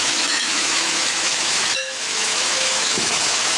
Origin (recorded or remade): remade